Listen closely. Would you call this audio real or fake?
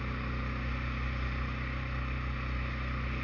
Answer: real